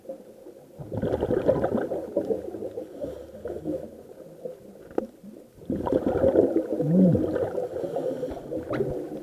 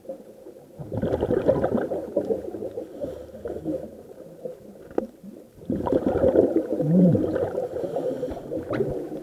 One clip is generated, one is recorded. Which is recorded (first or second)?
first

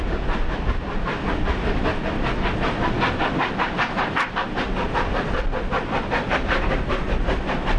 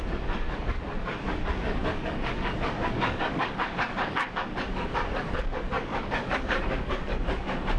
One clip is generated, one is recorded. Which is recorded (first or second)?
first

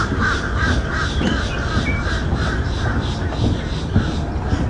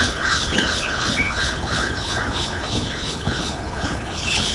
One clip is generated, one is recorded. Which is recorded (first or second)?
first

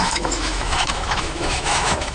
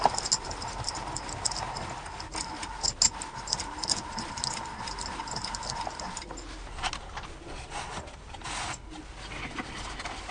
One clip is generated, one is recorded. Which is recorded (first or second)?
second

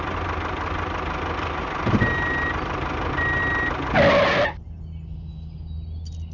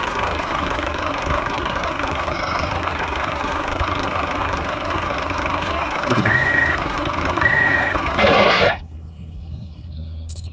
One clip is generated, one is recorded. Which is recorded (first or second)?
first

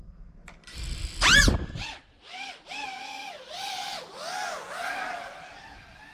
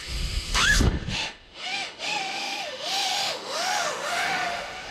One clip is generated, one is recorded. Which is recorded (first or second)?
first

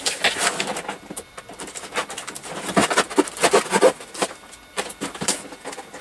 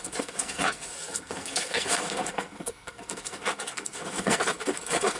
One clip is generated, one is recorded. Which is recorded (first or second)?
first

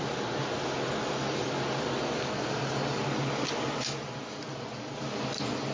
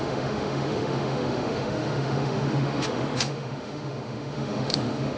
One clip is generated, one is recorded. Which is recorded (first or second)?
first